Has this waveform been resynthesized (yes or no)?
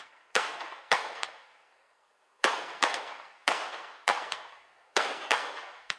yes